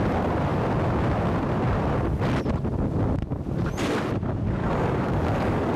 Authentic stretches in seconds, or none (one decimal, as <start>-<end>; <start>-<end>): 0.0-4.6